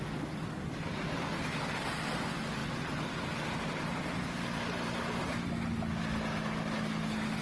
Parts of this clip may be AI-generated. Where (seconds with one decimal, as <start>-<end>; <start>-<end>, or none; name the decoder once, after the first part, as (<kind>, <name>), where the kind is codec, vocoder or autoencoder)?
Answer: none